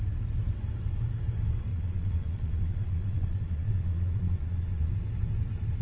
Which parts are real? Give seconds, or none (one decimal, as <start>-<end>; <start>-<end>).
0.0-1.7; 4.9-5.8